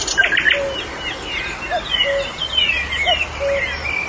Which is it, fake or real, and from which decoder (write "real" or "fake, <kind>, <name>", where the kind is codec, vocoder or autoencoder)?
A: real